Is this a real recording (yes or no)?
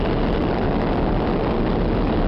yes